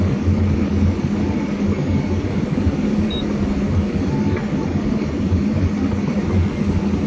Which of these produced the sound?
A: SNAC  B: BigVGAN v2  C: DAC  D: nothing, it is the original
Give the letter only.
C